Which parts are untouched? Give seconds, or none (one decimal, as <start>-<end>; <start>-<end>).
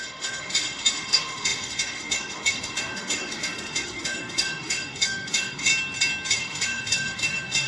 5.7-6.3